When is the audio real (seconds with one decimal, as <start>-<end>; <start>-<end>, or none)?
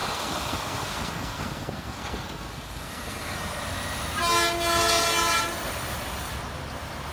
3.6-7.1